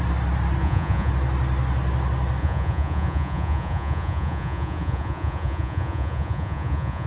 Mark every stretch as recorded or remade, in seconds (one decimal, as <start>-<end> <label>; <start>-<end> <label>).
0.0-0.6 recorded; 0.6-1.1 remade; 1.1-2.4 recorded; 2.4-7.1 remade